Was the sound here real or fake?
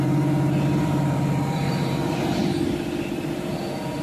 fake